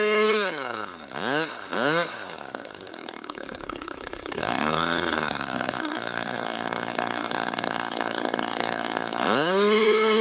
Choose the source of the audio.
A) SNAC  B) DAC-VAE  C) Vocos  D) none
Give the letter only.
A